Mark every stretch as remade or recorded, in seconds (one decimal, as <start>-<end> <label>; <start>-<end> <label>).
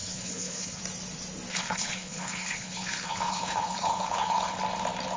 0.0-0.8 remade; 0.8-1.5 recorded; 1.5-4.6 remade; 4.6-5.2 recorded